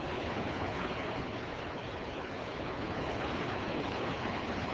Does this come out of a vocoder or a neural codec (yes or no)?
yes